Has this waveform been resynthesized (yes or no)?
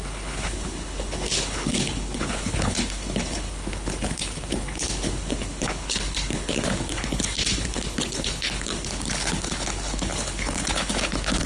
yes